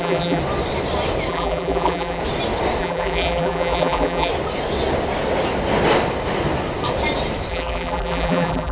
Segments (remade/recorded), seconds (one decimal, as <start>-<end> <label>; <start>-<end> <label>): 0.0-0.4 remade; 0.4-1.3 recorded; 1.3-2.2 remade; 2.2-2.8 recorded; 2.8-4.3 remade; 4.3-7.5 recorded; 7.5-8.7 remade